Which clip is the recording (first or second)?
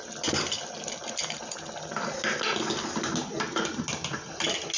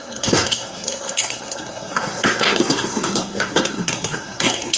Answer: first